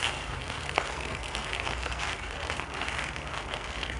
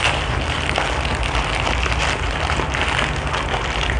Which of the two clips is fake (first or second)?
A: first